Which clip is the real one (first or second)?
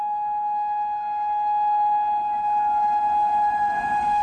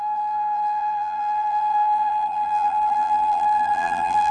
first